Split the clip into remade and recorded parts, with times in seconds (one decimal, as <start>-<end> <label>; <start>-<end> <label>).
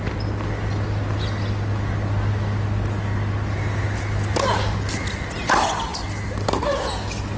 0.0-7.4 recorded